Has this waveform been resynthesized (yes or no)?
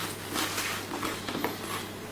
no